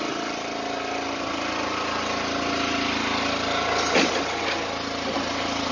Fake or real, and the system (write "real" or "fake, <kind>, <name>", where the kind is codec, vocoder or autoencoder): real